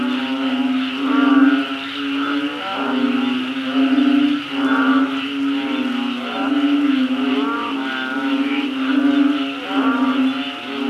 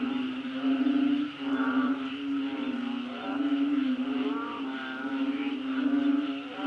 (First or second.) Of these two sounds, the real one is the first